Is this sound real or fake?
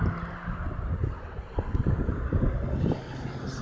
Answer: real